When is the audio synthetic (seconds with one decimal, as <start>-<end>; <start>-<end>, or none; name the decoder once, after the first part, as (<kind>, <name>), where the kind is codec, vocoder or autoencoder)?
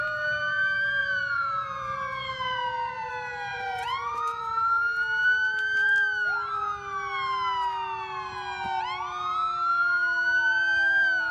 1.0-3.1 (vocoder, Vocos); 3.5-4.4